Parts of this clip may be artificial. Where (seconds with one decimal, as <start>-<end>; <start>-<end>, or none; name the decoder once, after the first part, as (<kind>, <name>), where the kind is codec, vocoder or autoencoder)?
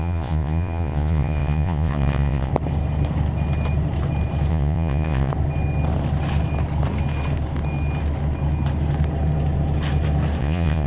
0.0-2.5 (vocoder, Vocos); 4.5-5.3; 10.4-10.9